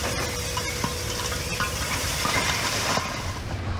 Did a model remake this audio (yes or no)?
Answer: no